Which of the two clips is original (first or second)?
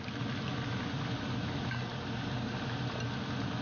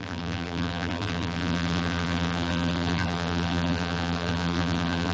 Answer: first